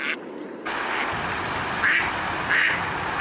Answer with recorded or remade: recorded